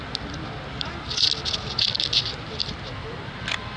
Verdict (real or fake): real